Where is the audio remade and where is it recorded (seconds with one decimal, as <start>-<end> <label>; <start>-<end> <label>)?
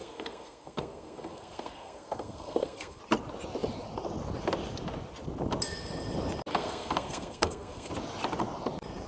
0.0-3.0 remade; 3.0-6.5 recorded; 6.5-7.9 remade; 7.9-9.1 recorded